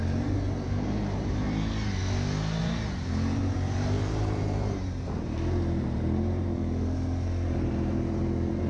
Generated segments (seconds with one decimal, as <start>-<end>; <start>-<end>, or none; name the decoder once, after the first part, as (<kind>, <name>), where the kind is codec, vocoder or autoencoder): 0.0-2.0 (vocoder, BigVGAN v2); 2.6-6.6; 7.5-8.7